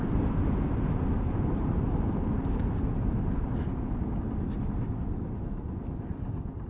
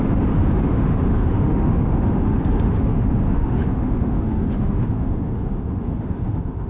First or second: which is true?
first